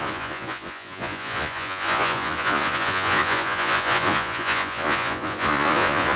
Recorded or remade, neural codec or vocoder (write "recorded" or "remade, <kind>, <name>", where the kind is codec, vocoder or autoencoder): remade, vocoder, Vocos